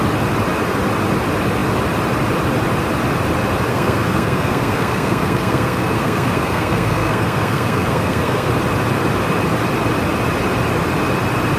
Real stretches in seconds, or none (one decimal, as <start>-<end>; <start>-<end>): 0.0-3.7; 8.5-11.6